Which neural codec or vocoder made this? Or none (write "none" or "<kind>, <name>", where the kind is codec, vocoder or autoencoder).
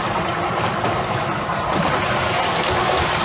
none